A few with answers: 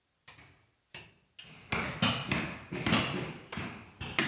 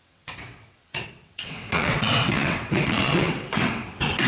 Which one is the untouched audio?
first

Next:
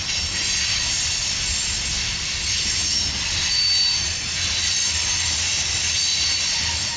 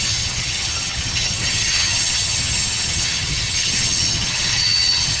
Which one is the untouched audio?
first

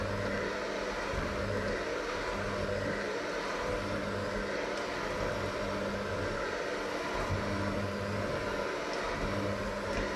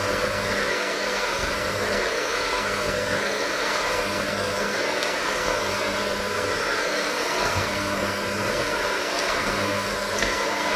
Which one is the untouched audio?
first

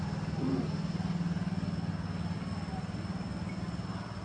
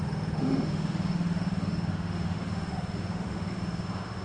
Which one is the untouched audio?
first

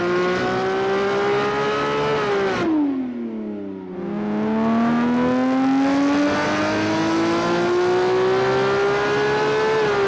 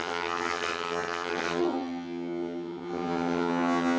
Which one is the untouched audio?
first